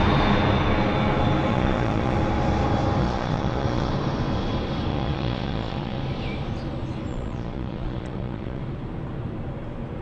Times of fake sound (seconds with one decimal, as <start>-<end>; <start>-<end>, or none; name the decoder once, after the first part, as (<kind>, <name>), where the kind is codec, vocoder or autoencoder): 1.5-2.2 (vocoder, Vocos); 3.0-3.9; 4.9-6.0; 7.1-8.6